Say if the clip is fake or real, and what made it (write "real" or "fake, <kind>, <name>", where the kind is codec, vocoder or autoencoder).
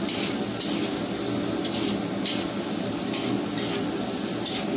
real